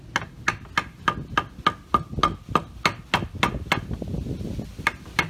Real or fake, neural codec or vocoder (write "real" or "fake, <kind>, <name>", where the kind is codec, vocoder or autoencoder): real